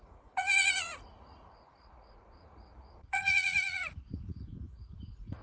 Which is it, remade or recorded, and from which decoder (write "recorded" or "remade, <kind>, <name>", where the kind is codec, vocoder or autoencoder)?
remade, vocoder, Vocos